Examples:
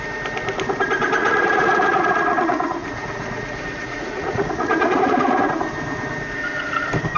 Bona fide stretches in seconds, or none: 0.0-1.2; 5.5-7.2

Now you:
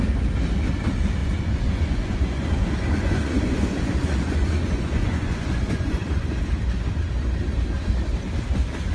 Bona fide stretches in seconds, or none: 0.0-1.2; 6.4-8.9

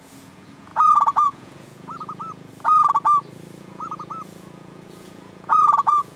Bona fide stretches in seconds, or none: 2.5-3.6

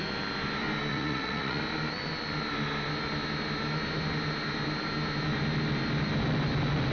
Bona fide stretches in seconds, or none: 0.0-0.9; 1.6-6.9

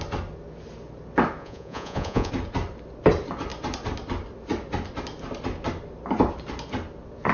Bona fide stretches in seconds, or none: 0.0-1.4; 2.3-7.3

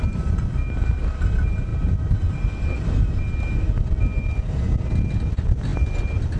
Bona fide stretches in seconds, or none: 0.0-6.4